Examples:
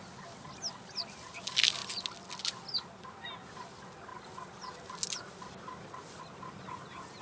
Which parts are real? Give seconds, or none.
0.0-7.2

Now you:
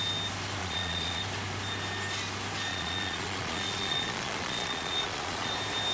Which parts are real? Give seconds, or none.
0.0-0.6; 1.2-2.7; 5.5-5.9

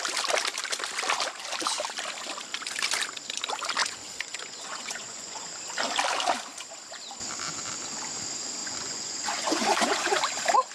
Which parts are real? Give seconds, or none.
0.0-3.8; 5.5-8.6; 10.2-10.7

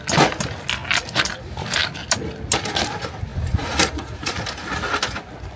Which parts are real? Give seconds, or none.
0.0-3.3; 4.3-5.6

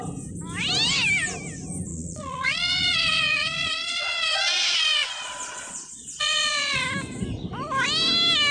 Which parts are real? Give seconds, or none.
0.0-1.9; 6.8-8.5

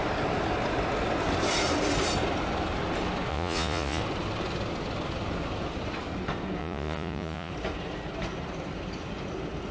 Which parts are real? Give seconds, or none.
0.0-3.3; 4.0-6.6; 7.5-9.7

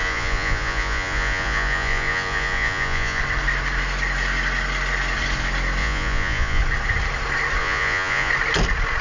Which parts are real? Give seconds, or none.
3.2-5.8; 6.6-7.6; 8.3-9.0

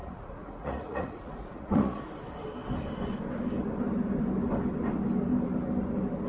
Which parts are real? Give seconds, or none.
2.0-6.3